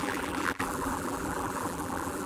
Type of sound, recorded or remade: remade